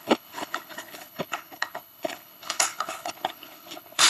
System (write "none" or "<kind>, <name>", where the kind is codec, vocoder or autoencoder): codec, HILCodec